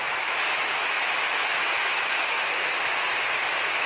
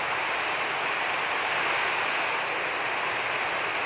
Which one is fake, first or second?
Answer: first